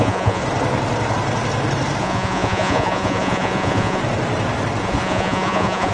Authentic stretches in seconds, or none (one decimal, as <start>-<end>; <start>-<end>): 0.4-2.0; 4.0-4.8